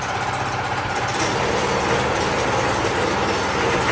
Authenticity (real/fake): real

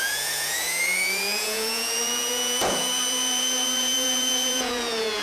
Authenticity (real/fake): fake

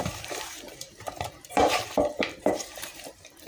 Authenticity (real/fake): fake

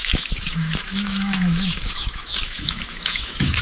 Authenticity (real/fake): fake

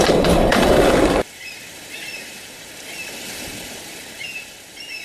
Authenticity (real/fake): fake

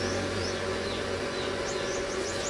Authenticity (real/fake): fake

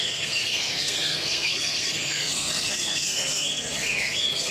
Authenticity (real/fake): fake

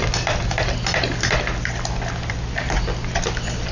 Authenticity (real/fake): real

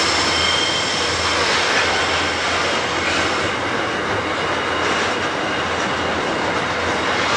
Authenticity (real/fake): real